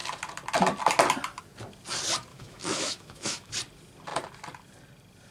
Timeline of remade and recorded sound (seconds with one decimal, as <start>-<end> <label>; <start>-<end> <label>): 0.0-2.3 recorded; 2.3-3.5 remade; 3.5-5.3 recorded